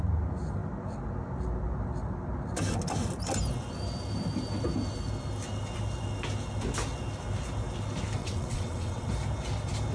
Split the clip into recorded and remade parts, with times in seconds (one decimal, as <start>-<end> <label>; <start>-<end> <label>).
0.0-8.2 recorded; 8.2-9.1 remade; 9.1-9.9 recorded